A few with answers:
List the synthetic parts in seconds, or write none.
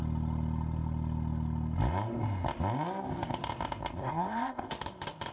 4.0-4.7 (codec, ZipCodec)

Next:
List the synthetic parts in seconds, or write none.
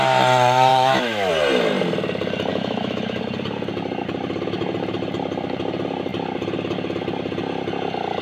0.7-1.3 (autoencoder, DAC-VAE); 2.5-3.2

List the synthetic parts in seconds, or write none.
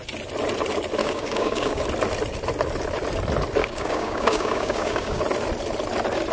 1.0-1.8 (codec, DAC); 3.6-5.2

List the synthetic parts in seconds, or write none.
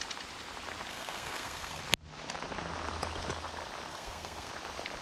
0.9-1.8 (codec, SNAC); 3.9-4.5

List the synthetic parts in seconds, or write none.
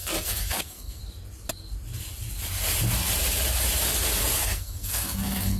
0.0-1.0 (codec, SNAC); 4.4-5.6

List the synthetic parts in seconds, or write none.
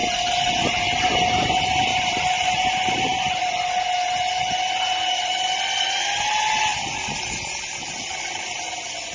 1.9-2.6 (vocoder, BigVGAN v2)